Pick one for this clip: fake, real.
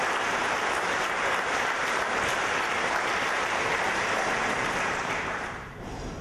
fake